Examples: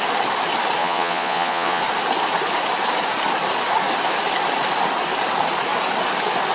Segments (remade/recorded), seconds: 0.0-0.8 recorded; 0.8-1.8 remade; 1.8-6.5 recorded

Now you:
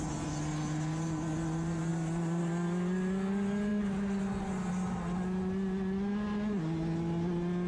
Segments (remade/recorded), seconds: 0.0-7.7 recorded

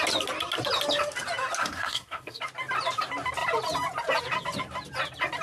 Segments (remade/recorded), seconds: 0.0-1.6 recorded; 1.6-2.4 remade; 2.4-5.4 recorded

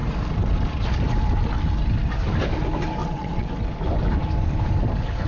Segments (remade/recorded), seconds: 0.0-3.0 recorded; 3.0-3.5 remade; 3.5-5.3 recorded

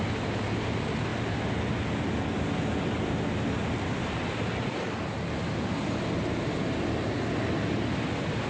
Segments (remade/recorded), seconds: 0.0-3.6 recorded; 3.6-6.0 remade; 6.0-8.5 recorded

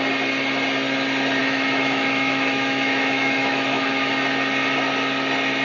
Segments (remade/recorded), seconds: 0.0-1.4 recorded; 1.4-4.1 remade; 4.1-5.6 recorded